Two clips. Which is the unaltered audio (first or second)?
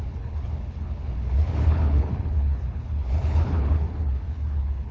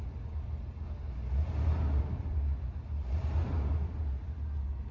second